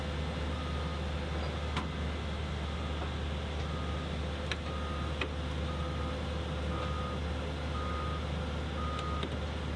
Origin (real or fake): real